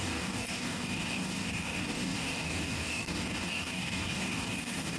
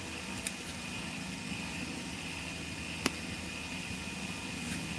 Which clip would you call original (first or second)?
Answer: second